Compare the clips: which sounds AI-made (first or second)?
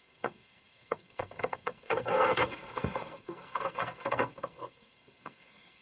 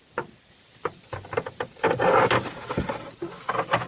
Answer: first